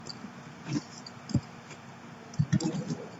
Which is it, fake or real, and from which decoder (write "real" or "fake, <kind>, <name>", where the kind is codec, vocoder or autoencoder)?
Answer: fake, vocoder, BigVGAN v2